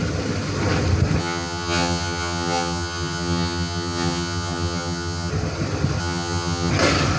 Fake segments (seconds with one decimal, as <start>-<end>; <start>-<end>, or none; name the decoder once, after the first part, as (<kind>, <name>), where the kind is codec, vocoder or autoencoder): 1.2-5.3 (vocoder, HiFi-GAN); 6.0-6.7